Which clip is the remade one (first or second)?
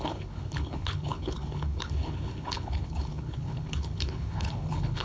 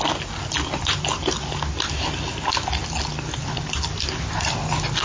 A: first